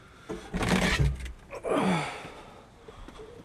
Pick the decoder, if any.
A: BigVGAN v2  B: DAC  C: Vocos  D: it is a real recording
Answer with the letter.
D